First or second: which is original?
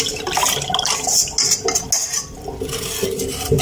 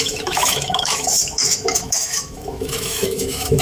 first